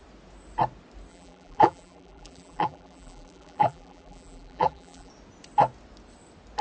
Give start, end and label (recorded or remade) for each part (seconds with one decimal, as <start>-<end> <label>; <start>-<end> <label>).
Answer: 0.0-1.1 recorded; 1.1-5.1 remade; 5.1-6.6 recorded

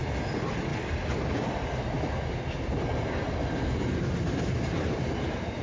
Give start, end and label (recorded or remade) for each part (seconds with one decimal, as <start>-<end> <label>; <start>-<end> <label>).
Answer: 0.0-5.6 recorded

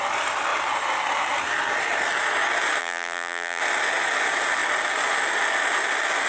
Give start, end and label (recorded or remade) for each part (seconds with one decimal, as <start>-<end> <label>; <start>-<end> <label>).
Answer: 0.0-2.8 recorded; 2.8-3.6 remade; 3.6-6.3 recorded

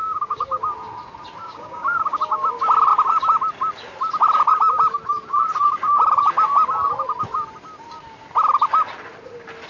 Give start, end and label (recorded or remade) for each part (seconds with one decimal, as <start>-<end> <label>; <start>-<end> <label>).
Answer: 0.0-0.6 remade; 0.6-1.4 recorded; 1.4-2.2 remade; 2.2-9.7 recorded

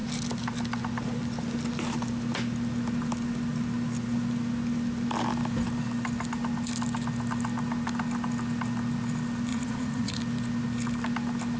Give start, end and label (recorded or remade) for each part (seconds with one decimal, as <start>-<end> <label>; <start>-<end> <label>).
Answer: 0.0-9.5 recorded; 9.5-10.2 remade; 10.2-11.6 recorded

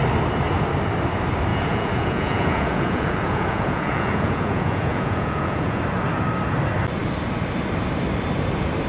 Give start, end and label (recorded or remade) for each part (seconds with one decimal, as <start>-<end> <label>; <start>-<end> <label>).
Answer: 0.0-1.5 recorded; 1.5-5.8 remade; 5.8-8.9 recorded

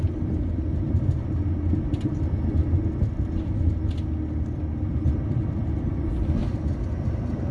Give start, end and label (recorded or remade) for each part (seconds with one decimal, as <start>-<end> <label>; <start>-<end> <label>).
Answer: 0.0-7.5 recorded

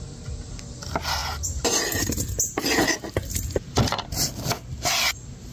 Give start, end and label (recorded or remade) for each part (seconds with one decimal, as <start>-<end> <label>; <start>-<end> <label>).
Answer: 0.0-5.5 recorded